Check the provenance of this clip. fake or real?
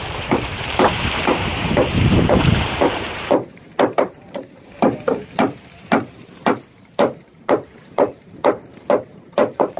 fake